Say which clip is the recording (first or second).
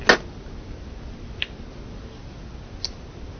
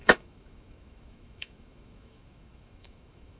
first